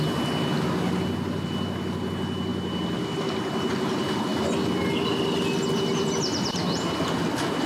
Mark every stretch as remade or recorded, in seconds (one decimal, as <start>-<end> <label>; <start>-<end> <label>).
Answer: 0.0-2.5 recorded; 2.5-3.7 remade; 3.7-7.7 recorded